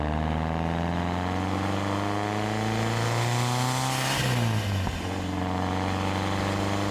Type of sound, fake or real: real